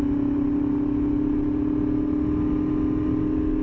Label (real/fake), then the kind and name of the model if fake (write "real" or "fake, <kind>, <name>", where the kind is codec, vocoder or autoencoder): real